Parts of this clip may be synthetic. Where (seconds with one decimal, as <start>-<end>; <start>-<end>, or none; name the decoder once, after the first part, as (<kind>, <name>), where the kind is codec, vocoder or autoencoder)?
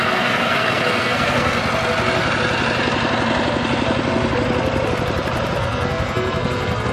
0.0-1.6 (codec, SNAC); 5.6-6.9